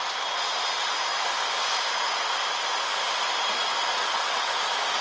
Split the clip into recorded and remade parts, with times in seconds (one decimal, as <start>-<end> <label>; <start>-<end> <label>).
0.0-3.9 recorded; 3.9-4.6 remade; 4.6-5.0 recorded